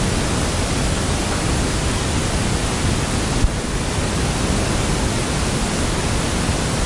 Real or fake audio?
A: real